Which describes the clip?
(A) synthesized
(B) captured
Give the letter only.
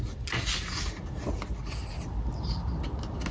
B